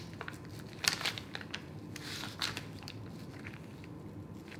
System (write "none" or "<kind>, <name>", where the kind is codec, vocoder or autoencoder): none